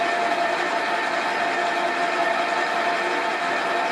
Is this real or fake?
real